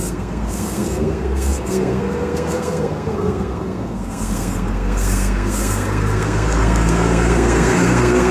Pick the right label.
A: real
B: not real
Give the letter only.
B